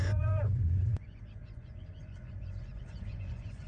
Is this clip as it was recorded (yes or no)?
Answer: no